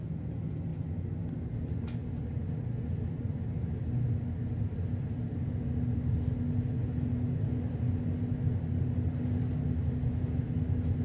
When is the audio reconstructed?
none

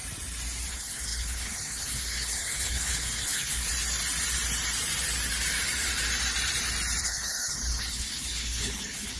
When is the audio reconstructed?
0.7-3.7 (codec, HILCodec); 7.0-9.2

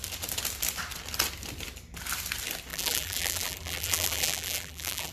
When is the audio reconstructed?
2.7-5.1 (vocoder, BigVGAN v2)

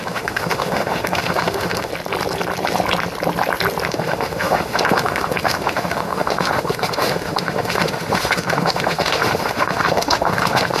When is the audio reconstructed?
0.0-1.9 (autoencoder, DAC-VAE); 3.9-10.8